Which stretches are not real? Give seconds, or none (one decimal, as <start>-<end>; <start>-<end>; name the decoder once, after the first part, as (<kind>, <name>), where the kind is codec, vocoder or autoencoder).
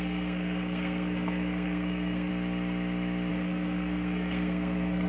0.0-2.3 (codec, SNAC); 3.3-5.1